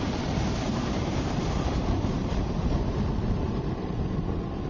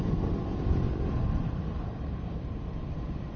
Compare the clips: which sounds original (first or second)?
second